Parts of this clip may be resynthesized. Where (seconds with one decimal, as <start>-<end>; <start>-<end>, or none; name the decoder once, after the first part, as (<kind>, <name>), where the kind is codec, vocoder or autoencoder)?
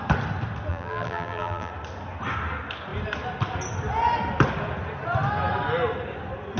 0.7-1.7 (vocoder, BigVGAN v2)